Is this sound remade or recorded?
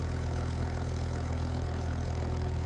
remade